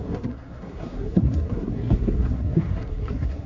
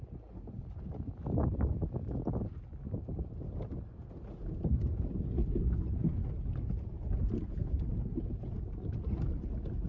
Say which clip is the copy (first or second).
first